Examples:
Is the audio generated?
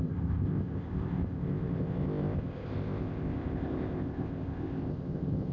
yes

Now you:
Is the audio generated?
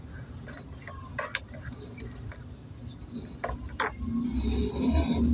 no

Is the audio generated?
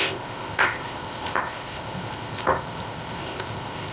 yes